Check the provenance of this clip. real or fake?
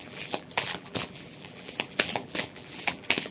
fake